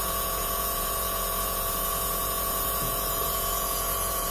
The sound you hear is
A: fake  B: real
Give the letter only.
A